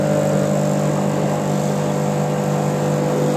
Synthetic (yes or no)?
no